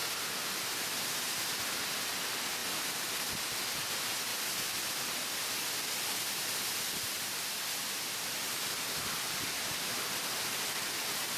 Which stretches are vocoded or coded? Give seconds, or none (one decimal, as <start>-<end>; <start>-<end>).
2.6-3.5; 7.8-8.6